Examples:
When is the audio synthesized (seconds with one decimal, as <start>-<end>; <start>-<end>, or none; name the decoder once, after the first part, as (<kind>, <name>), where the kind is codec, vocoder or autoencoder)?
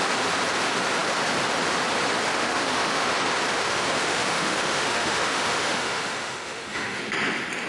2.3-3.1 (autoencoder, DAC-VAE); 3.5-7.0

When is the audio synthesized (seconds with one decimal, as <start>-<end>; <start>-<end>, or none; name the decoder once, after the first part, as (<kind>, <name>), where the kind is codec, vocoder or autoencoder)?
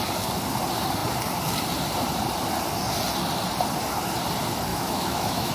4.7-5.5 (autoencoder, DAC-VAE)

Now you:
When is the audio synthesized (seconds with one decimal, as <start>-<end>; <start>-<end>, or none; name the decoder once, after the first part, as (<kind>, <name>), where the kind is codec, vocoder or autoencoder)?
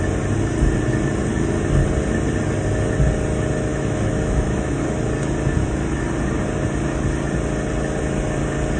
3.7-4.8 (autoencoder, DAC-VAE)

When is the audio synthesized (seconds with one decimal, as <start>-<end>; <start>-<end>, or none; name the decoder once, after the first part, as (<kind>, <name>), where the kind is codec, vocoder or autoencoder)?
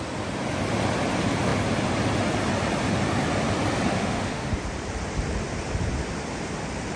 3.9-4.5 (autoencoder, DAC-VAE)